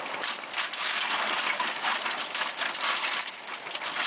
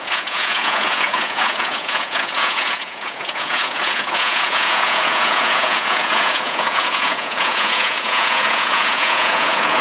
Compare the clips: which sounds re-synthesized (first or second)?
second